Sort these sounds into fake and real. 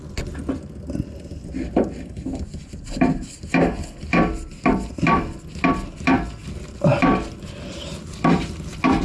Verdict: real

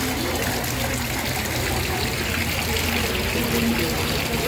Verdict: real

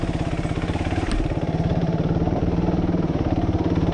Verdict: fake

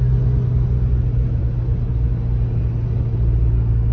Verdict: real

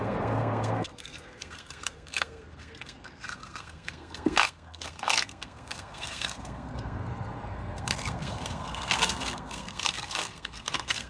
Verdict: fake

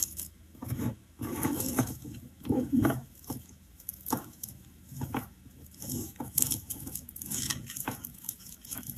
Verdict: fake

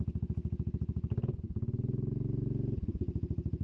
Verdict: real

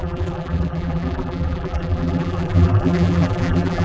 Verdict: fake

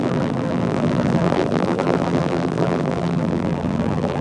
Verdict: fake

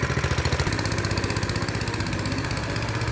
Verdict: real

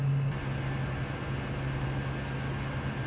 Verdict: real